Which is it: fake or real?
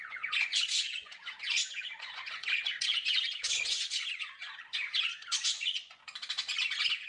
fake